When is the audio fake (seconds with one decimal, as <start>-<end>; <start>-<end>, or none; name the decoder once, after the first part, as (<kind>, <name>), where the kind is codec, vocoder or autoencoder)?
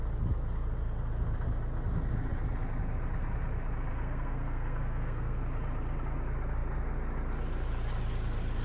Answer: 3.9-5.4 (codec, SNAC)